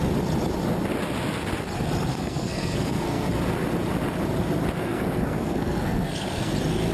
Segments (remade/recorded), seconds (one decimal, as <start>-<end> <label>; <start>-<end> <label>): 0.0-2.1 recorded; 2.1-3.3 remade; 3.3-4.8 recorded; 4.8-6.5 remade; 6.5-6.9 recorded